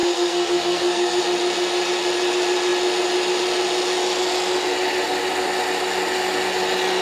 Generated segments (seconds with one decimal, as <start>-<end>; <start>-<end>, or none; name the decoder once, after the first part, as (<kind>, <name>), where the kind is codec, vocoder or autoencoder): 0.0-1.2 (codec, SNAC)

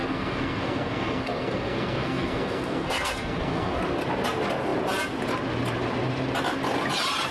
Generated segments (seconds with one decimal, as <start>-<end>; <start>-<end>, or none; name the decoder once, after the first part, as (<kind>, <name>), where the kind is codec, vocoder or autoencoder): 0.0-3.8 (codec, SNAC)